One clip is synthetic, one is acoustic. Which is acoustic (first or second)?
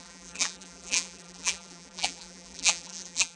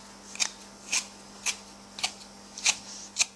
second